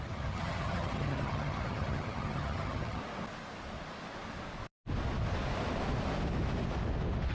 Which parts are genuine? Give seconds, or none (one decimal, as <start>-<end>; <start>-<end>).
3.0-7.3